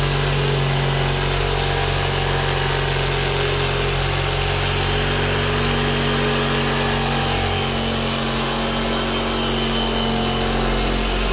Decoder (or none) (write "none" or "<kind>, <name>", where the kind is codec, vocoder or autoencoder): none